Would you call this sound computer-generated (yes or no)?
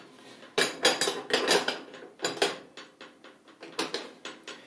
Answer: no